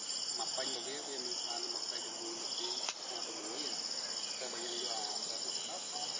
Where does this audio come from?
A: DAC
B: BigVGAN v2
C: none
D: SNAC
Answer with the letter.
C